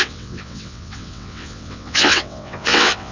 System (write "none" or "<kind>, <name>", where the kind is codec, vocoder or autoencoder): vocoder, WaveNeXt